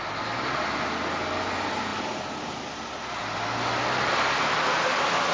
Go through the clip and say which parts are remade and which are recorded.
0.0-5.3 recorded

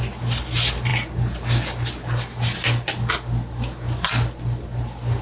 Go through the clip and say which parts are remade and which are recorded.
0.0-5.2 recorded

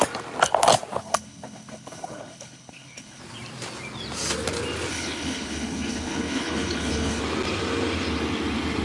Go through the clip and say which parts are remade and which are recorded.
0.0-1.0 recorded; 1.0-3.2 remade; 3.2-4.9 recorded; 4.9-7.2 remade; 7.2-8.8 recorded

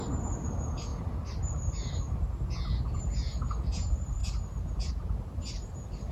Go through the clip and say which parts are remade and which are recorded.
0.0-6.1 recorded

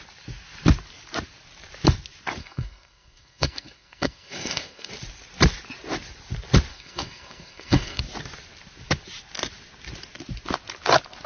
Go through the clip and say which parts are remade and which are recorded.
0.0-2.4 recorded; 2.4-4.9 remade; 4.9-6.7 recorded; 6.7-8.0 remade; 8.0-11.3 recorded

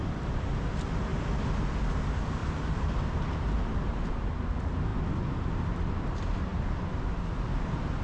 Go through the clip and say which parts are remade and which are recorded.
0.0-2.4 recorded; 2.4-4.1 remade; 4.1-8.0 recorded